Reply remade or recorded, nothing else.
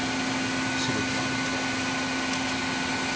recorded